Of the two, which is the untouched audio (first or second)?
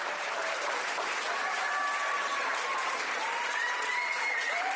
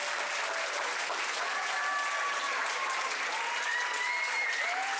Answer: second